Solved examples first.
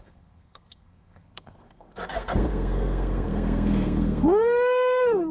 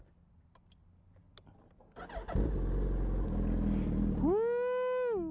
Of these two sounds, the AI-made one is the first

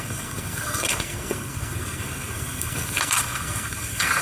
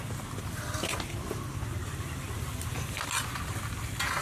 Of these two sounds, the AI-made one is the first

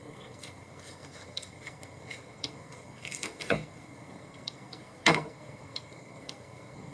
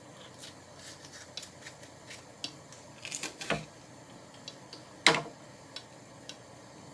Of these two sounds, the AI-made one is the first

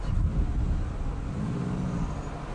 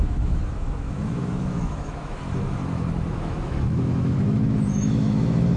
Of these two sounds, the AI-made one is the second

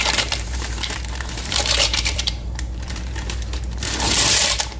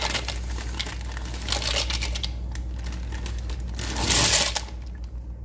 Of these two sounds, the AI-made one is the first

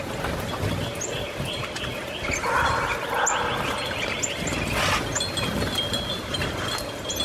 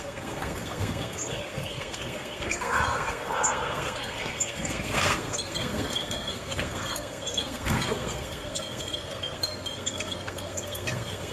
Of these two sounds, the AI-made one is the second